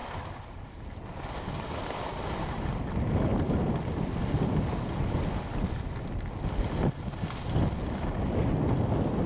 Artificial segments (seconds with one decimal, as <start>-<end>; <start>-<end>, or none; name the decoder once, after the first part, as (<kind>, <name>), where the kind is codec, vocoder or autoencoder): 0.0-0.8 (vocoder, BigVGAN v2); 2.1-2.7